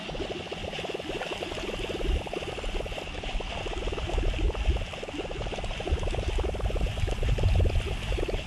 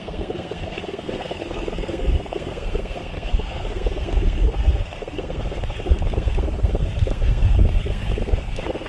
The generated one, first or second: second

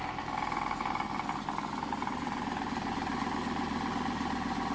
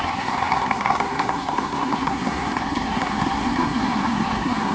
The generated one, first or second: second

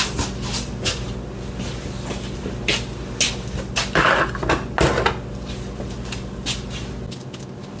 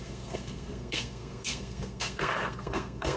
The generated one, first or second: second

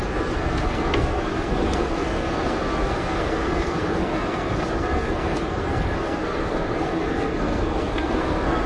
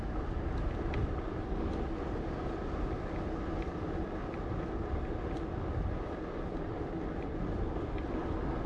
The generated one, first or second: first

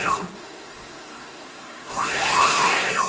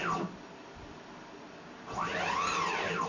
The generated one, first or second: first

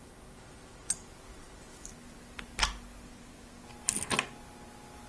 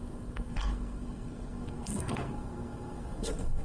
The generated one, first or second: second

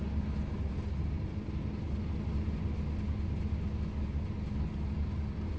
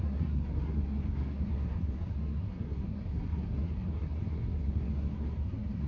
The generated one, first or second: second